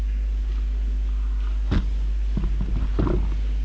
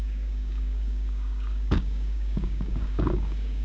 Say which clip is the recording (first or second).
first